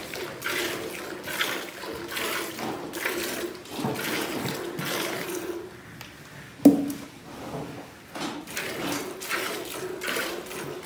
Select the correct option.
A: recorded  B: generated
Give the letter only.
A